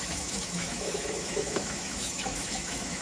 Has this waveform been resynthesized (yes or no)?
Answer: yes